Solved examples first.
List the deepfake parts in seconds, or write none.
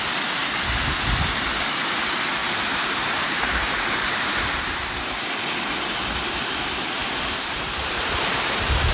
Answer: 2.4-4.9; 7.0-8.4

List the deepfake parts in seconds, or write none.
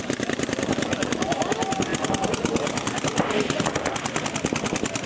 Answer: 0.0-5.1